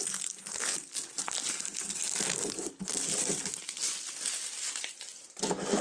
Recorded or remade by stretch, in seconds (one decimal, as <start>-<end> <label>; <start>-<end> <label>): 0.0-0.7 remade; 0.7-4.2 recorded; 4.2-5.8 remade